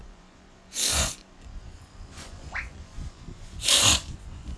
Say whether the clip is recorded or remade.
remade